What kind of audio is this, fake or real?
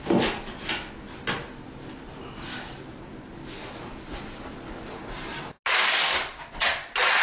real